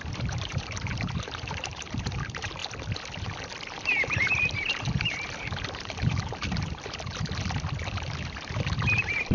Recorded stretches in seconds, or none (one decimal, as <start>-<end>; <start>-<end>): 2.6-3.6; 7.1-7.8